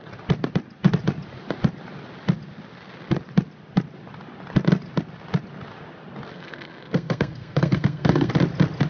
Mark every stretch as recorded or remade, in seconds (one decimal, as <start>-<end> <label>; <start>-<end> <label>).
0.0-6.3 recorded; 6.3-8.3 remade; 8.3-8.9 recorded